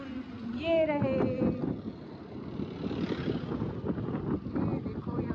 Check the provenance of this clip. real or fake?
real